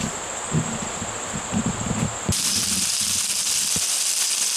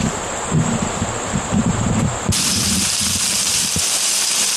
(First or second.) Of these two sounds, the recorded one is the first